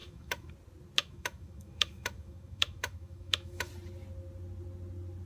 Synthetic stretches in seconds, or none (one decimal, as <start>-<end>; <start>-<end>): 0.0-0.5; 1.0-3.7